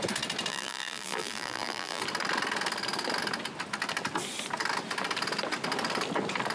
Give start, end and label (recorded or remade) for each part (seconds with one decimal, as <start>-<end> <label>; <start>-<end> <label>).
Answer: 0.0-0.5 recorded; 0.5-2.0 remade; 2.0-6.5 recorded